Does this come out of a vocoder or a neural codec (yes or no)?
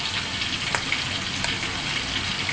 no